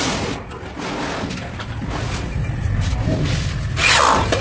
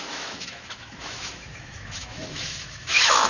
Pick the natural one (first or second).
first